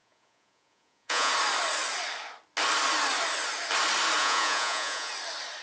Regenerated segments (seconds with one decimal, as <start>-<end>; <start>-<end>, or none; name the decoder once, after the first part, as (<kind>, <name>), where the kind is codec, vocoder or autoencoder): 0.0-1.3 (vocoder, Vocos); 4.2-5.1